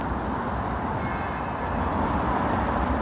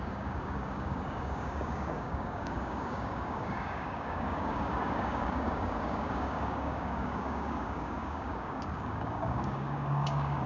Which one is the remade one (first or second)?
second